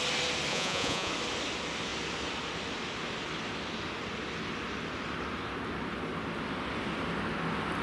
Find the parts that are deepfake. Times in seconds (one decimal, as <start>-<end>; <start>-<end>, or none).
0.5-1.1

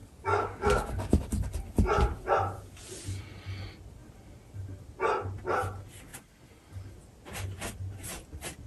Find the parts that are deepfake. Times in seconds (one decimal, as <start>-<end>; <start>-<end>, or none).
0.0-1.2